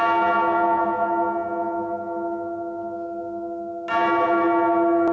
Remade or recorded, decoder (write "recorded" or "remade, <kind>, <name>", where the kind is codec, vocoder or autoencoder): recorded